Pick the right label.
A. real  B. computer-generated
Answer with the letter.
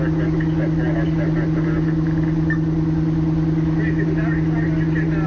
A